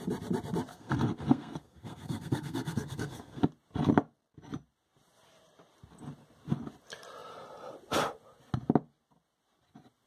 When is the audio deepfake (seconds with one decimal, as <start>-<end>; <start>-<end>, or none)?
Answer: 0.7-3.4